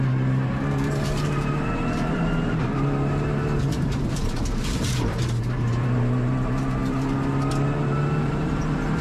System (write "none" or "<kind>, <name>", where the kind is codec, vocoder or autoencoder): vocoder, BigVGAN v2